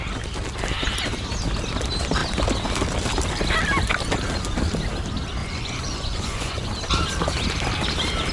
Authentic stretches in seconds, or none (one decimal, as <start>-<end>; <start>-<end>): 0.0-5.4; 6.7-8.3